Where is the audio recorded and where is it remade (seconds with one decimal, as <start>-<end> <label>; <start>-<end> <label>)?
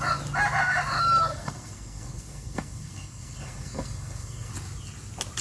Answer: 0.0-1.3 recorded; 1.3-4.5 remade; 4.5-5.4 recorded